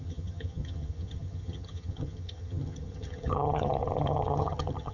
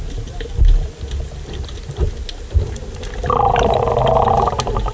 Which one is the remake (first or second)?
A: first